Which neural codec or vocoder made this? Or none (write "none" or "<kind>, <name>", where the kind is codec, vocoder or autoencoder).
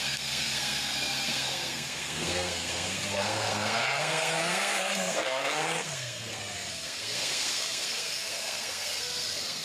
codec, SNAC